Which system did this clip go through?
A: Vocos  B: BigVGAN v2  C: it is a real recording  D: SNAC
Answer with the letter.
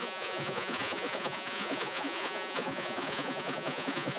A